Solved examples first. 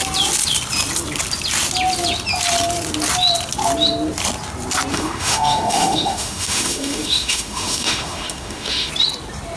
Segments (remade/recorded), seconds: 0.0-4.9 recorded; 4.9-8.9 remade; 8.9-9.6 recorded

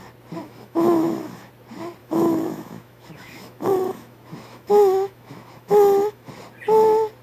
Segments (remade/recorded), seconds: 0.0-0.4 recorded; 0.4-1.5 remade; 1.5-2.0 recorded; 2.0-6.3 remade; 6.3-7.2 recorded